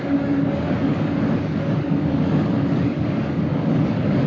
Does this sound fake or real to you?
fake